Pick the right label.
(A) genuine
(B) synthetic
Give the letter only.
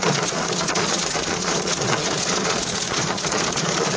B